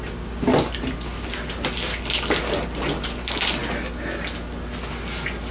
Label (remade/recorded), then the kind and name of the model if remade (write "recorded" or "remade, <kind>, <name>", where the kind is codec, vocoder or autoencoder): recorded